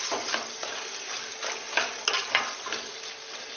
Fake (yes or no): no